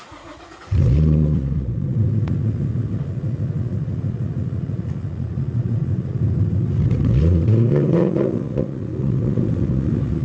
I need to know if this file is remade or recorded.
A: remade